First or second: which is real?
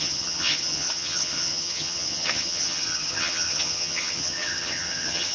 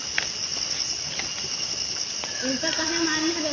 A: second